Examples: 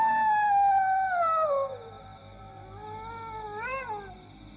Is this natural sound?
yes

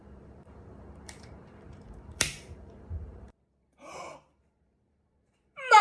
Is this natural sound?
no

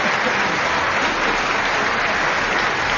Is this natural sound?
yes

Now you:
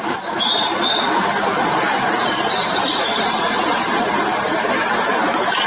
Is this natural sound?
yes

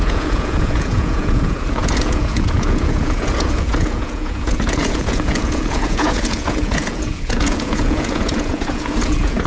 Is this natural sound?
no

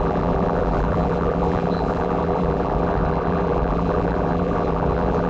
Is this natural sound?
no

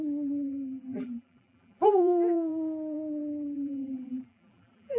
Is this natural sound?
no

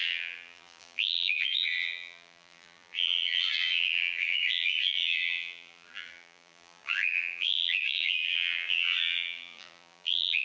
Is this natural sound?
no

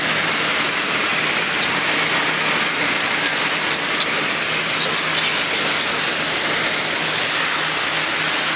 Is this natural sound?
yes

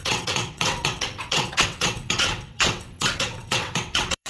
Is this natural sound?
no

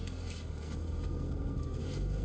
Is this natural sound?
no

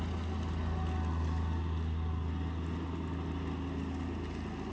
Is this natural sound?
yes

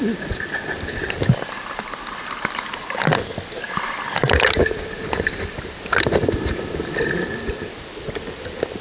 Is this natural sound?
yes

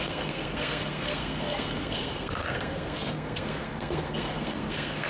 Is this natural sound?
no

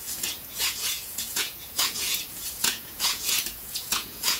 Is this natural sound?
no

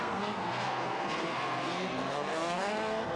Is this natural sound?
no